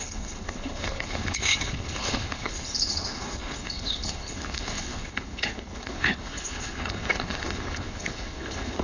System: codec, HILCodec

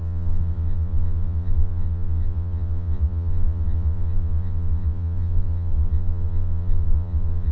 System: vocoder, Vocos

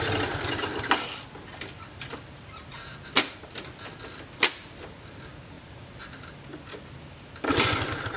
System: none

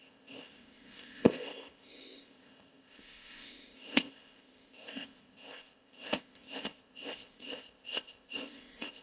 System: codec, ZipCodec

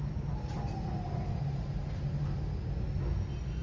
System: none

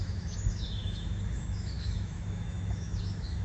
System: autoencoder, DAC-VAE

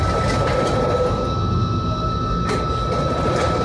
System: none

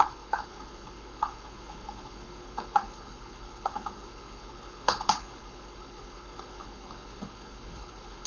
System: codec, HILCodec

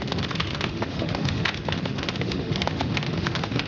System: autoencoder, DAC-VAE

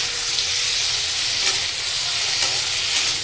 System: none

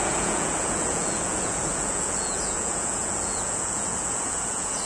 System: vocoder, Vocos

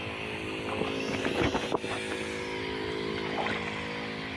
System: none